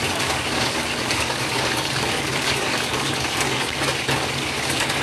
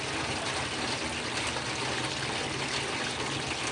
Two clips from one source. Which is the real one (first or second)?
second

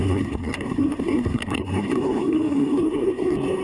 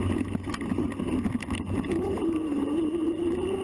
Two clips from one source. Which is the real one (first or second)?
second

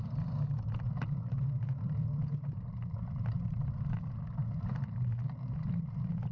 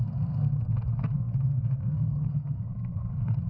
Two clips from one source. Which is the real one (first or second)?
first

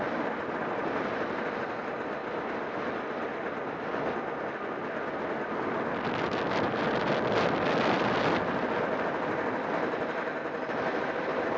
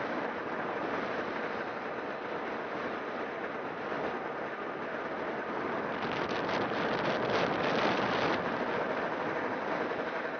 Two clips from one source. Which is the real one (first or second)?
first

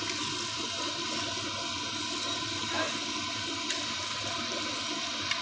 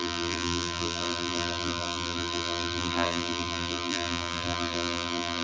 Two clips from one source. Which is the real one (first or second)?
first